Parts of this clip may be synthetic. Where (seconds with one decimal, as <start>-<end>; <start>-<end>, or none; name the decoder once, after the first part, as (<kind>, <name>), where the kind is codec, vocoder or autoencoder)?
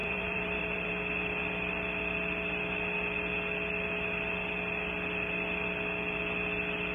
0.0-0.9 (vocoder, BigVGAN v2)